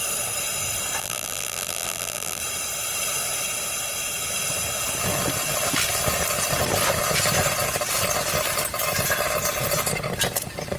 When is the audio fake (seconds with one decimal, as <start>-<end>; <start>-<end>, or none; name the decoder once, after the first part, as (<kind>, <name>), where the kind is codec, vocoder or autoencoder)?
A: 1.0-2.4 (vocoder, BigVGAN v2)